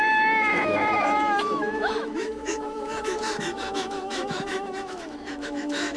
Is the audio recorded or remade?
remade